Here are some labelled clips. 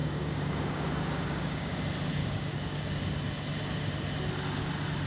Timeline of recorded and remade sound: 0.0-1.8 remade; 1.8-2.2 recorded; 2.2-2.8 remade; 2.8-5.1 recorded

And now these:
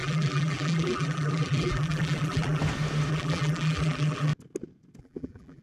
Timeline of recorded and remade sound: 0.0-2.6 remade; 2.6-3.1 recorded; 3.1-4.3 remade; 4.3-5.0 recorded; 5.0-5.6 remade

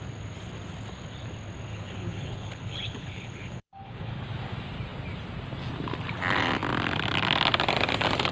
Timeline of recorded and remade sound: 0.0-1.7 recorded; 1.7-4.1 remade; 4.1-8.3 recorded

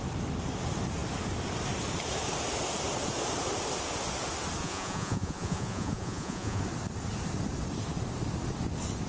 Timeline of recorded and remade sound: 0.0-4.6 recorded; 4.6-6.6 remade; 6.6-9.1 recorded

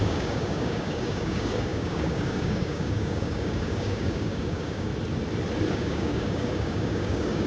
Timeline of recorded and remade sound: 0.0-4.9 remade; 4.9-5.7 recorded; 5.7-7.5 remade

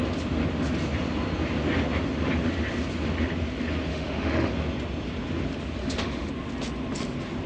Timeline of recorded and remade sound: 0.0-3.9 recorded; 3.9-4.5 remade; 4.5-5.8 recorded; 5.8-6.3 remade; 6.3-7.5 recorded

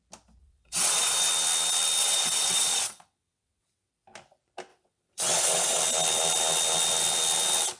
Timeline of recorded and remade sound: 0.0-0.4 recorded; 0.4-1.3 remade; 1.3-2.0 recorded; 2.0-3.9 remade; 3.9-4.7 recorded; 4.7-5.8 remade; 5.8-7.8 recorded

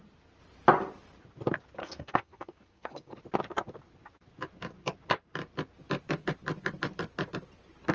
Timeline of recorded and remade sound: 0.0-1.8 recorded; 1.8-3.2 remade; 3.2-7.9 recorded